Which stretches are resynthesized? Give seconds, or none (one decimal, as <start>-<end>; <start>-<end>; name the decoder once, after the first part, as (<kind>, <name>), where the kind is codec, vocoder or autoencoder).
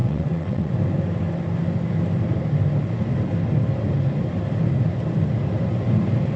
0.0-0.7 (vocoder, WaveNeXt)